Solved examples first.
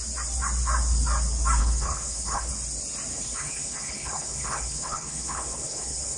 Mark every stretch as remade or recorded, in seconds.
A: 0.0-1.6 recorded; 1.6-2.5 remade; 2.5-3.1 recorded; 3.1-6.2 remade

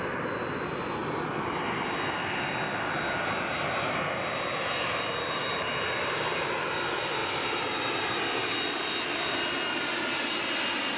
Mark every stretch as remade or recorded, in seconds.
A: 0.0-11.0 recorded

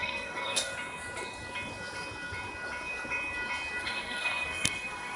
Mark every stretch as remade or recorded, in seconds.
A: 0.0-0.7 remade; 0.7-3.8 recorded; 3.8-5.2 remade

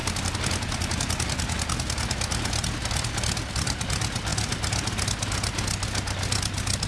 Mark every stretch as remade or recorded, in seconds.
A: 0.0-6.9 recorded

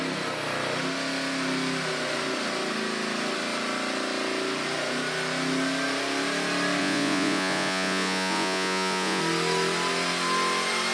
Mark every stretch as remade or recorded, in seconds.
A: 0.0-6.8 recorded; 6.8-9.2 remade; 9.2-10.9 recorded

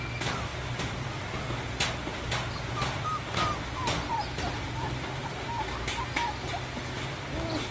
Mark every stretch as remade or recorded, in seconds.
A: 0.0-7.7 recorded

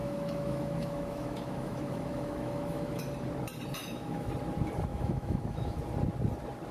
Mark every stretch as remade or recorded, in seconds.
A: 0.0-3.0 remade; 3.0-3.8 recorded; 3.8-4.3 remade; 4.3-4.9 recorded; 4.9-5.8 remade; 5.8-6.7 recorded

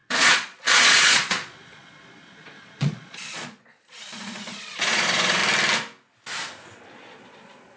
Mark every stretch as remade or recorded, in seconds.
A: 0.0-5.4 remade; 5.4-6.9 recorded; 6.9-7.8 remade